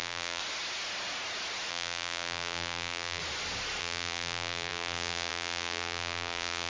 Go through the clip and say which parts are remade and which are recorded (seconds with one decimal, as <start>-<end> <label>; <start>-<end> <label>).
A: 0.0-0.4 remade; 0.4-1.7 recorded; 1.7-3.2 remade; 3.2-3.8 recorded; 3.8-6.7 remade